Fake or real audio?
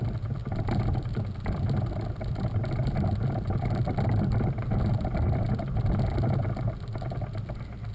real